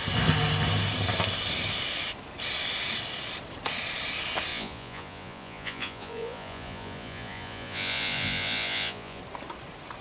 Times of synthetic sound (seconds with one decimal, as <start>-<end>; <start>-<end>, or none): 4.5-9.2